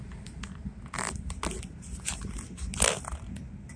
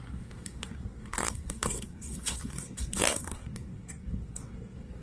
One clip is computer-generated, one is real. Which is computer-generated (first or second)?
second